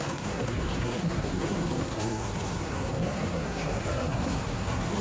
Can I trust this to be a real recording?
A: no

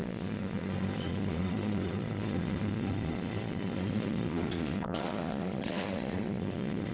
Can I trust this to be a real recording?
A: no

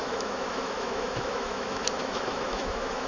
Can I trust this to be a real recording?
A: no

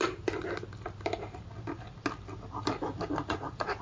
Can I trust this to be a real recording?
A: yes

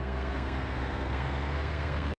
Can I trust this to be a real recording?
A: no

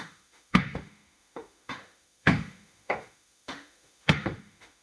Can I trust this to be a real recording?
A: no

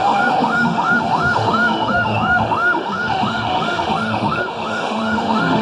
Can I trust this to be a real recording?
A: no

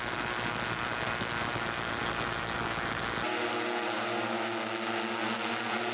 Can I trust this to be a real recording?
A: yes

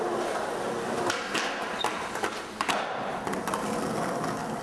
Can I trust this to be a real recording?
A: yes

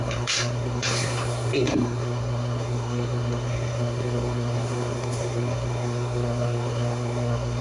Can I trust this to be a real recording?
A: no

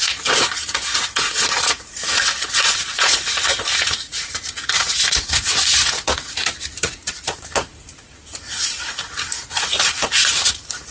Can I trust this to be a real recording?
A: no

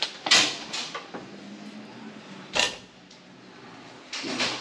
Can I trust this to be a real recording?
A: yes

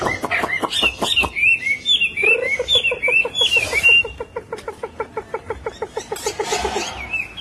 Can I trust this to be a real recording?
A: yes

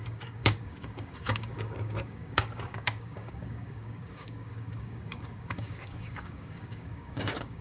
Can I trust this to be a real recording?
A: no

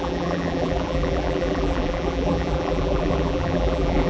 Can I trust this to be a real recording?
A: no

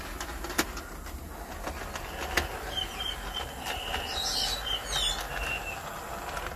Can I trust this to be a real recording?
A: yes